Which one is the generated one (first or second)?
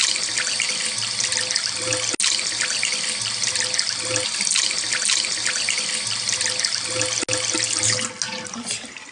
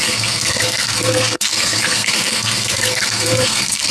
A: second